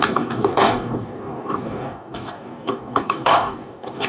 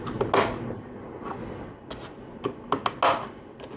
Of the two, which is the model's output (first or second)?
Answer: first